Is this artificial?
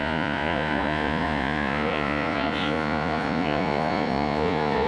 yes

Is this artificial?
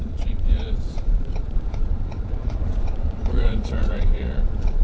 yes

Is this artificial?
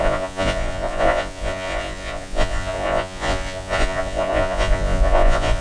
yes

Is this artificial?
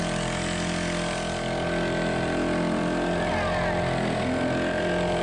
no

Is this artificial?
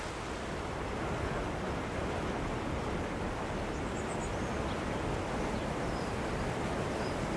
no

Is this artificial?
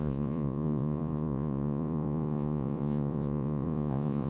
yes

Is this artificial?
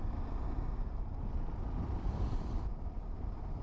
no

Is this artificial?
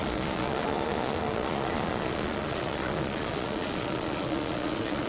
yes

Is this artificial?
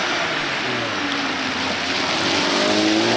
no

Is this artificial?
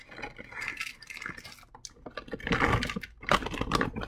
no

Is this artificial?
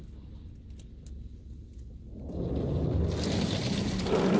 no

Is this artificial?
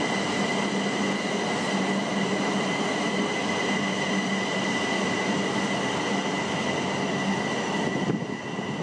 no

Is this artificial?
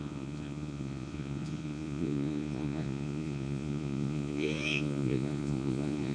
yes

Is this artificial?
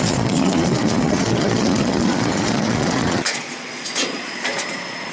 yes